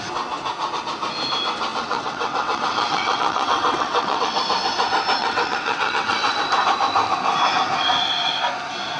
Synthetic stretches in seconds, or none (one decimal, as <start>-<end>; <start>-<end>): 1.7-4.4; 5.2-6.4